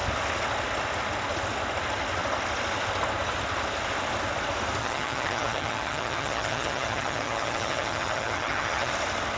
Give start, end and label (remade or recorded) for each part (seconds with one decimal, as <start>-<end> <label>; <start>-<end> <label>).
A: 0.0-4.8 recorded; 4.8-8.9 remade; 8.9-9.4 recorded